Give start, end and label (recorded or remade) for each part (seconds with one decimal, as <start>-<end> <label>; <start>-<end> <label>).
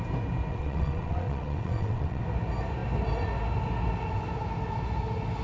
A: 0.0-0.5 recorded; 0.5-2.2 remade; 2.2-5.4 recorded